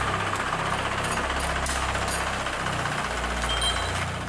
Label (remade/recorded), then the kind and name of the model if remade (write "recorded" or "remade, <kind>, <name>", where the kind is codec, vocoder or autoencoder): recorded